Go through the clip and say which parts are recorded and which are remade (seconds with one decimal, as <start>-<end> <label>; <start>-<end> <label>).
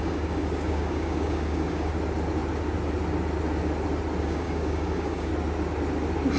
0.0-1.9 remade; 1.9-4.2 recorded; 4.2-5.3 remade; 5.3-6.4 recorded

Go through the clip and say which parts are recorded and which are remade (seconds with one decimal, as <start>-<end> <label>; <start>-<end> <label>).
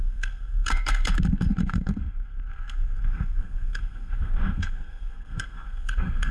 0.0-6.3 remade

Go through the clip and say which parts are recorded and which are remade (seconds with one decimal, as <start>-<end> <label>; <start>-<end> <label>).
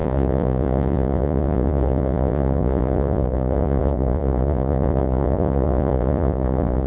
0.0-6.9 remade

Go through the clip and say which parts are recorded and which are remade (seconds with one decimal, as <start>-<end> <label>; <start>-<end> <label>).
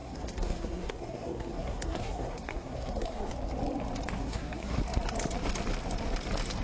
0.0-3.3 remade; 3.3-4.2 recorded; 4.2-4.8 remade; 4.8-6.6 recorded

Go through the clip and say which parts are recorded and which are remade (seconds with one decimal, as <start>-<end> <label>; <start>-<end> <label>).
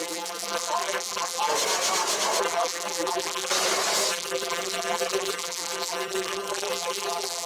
0.0-1.5 remade; 1.5-2.4 recorded; 2.4-3.5 remade; 3.5-4.1 recorded; 4.1-7.5 remade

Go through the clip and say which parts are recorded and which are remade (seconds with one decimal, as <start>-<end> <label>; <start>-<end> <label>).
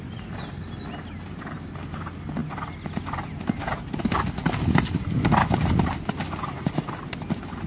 0.0-7.7 recorded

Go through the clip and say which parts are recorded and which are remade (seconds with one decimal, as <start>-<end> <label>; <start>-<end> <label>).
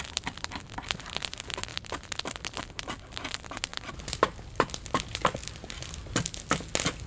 0.0-7.1 recorded